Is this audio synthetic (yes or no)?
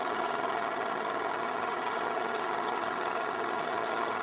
yes